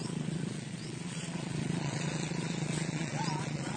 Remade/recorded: remade